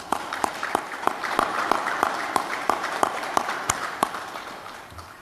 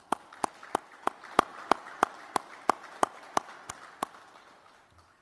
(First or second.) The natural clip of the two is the second